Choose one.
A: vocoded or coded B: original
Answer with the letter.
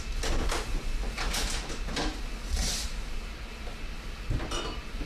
B